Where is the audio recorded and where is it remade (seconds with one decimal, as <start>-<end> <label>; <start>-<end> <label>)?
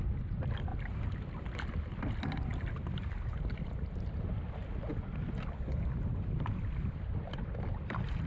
0.0-8.3 recorded